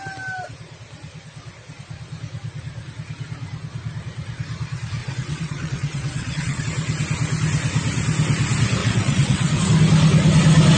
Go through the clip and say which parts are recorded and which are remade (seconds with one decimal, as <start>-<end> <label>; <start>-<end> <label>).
0.0-5.0 recorded; 5.0-6.6 remade; 6.6-8.8 recorded; 8.8-9.6 remade; 9.6-10.8 recorded